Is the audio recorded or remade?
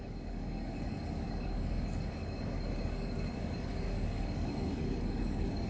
remade